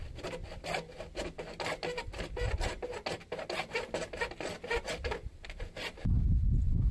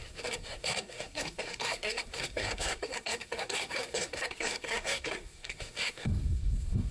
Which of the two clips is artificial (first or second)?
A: second